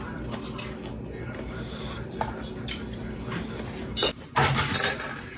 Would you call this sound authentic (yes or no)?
yes